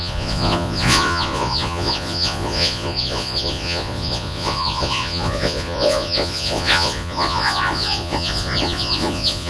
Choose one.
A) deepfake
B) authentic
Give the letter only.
A